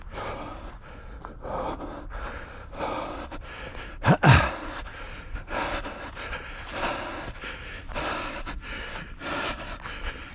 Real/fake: real